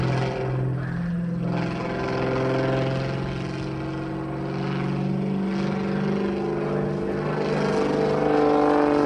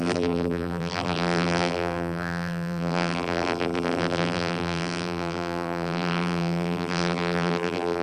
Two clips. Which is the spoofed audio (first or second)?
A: second